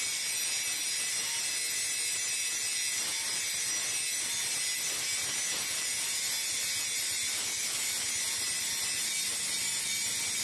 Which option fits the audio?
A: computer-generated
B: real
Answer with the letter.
B